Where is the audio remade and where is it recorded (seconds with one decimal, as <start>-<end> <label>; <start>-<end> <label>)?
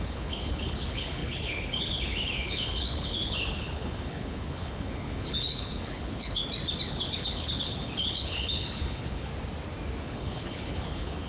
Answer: 0.0-6.4 remade; 6.4-6.9 recorded; 6.9-9.3 remade; 9.3-10.0 recorded; 10.0-11.3 remade